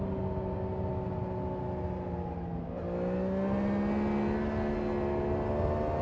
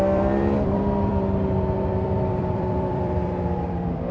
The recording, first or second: first